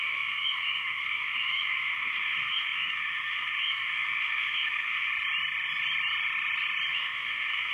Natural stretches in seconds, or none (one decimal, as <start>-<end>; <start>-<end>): 5.1-6.9